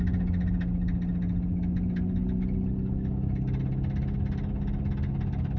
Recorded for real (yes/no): yes